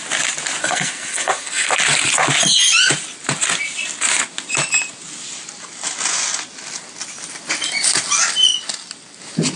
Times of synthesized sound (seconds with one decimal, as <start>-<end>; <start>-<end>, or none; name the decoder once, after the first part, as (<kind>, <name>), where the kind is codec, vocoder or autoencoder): 0.6-1.7 (codec, SNAC)